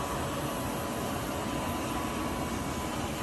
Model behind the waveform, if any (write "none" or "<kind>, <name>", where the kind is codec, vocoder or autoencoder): none